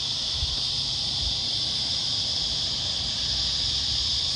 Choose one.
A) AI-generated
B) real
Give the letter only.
A